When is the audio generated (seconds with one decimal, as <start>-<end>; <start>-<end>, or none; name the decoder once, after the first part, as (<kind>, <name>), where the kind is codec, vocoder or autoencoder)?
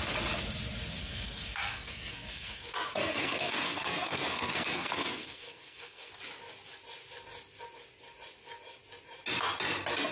1.0-6.1 (codec, SNAC)